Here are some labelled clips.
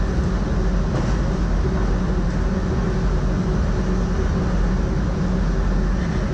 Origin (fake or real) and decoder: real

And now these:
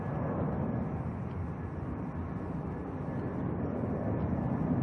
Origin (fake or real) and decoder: real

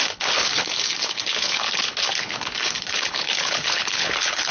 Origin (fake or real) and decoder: fake, codec, HILCodec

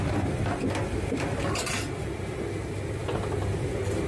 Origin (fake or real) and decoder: real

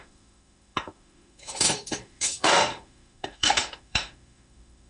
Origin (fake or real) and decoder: fake, autoencoder, DAC-VAE